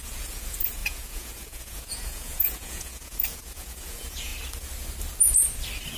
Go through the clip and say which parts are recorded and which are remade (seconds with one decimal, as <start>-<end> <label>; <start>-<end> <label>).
0.0-4.3 remade; 4.3-6.0 recorded

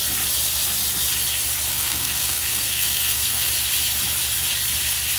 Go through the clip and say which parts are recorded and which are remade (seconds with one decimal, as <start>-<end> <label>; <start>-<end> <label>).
0.0-1.7 recorded; 1.7-3.5 remade; 3.5-5.2 recorded

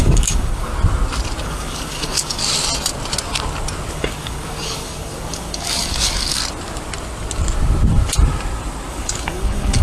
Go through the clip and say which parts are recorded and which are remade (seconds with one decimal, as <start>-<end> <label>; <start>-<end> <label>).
0.0-0.7 remade; 0.7-1.4 recorded; 1.4-2.4 remade; 2.4-3.9 recorded; 3.9-6.4 remade; 6.4-8.9 recorded; 8.9-9.8 remade

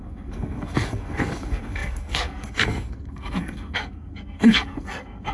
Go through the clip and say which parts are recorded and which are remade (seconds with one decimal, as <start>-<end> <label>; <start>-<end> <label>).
0.0-5.3 remade

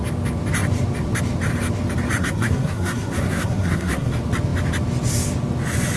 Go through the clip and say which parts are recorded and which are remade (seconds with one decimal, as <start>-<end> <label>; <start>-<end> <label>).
0.0-2.2 recorded; 2.2-4.1 remade; 4.1-6.0 recorded

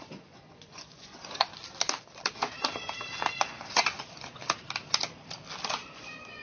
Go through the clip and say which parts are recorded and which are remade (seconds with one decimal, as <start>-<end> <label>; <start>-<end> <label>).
0.0-1.5 remade; 1.5-3.5 recorded; 3.5-4.4 remade; 4.4-5.7 recorded; 5.7-6.4 remade

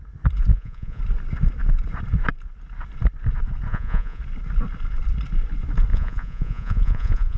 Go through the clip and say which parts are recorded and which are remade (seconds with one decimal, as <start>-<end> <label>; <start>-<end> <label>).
0.0-0.5 recorded; 0.5-1.0 remade; 1.0-3.7 recorded; 3.7-4.2 remade; 4.2-5.9 recorded; 5.9-7.4 remade